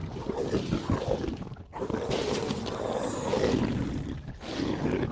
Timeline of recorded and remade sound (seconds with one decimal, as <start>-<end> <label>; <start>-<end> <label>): 0.0-5.1 recorded